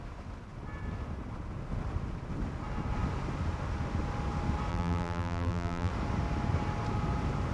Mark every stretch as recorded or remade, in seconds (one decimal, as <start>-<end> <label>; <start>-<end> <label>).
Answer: 0.0-4.7 recorded; 4.7-5.9 remade; 5.9-7.5 recorded